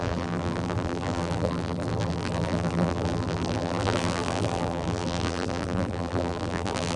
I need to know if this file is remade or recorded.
remade